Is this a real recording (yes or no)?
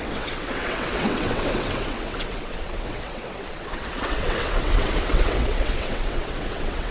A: no